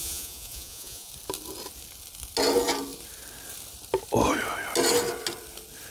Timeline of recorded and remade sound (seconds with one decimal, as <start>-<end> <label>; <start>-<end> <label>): 0.0-1.1 remade; 1.1-5.9 recorded